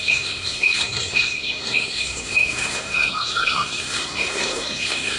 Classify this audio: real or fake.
fake